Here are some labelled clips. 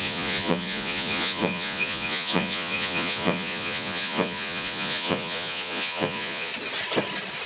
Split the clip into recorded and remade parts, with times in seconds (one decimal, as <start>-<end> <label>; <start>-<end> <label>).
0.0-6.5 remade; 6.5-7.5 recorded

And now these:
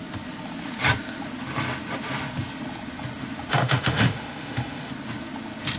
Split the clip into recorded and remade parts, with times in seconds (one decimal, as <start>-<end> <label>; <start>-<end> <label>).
0.0-3.5 recorded; 3.5-4.9 remade; 4.9-5.8 recorded

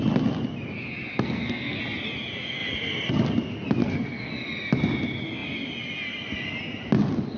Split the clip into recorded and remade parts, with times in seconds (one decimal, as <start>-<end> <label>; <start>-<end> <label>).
0.0-1.1 recorded; 1.1-1.8 remade; 1.8-3.8 recorded; 3.8-4.3 remade; 4.3-7.4 recorded

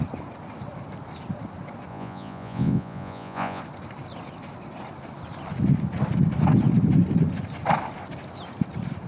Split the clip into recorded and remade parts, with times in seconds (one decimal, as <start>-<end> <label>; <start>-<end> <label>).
0.0-1.9 recorded; 1.9-3.6 remade; 3.6-9.1 recorded